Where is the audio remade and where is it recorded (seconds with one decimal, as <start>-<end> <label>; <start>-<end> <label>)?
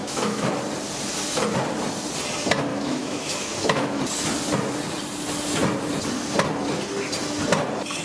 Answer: 0.0-0.5 remade; 0.5-2.7 recorded; 2.7-4.0 remade; 4.0-8.0 recorded